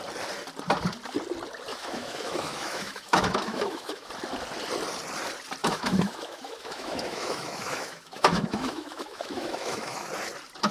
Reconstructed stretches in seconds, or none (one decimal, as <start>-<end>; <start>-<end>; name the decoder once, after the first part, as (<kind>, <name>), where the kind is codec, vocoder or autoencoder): 1.7-4.1 (autoencoder, DAC-VAE); 5.6-10.1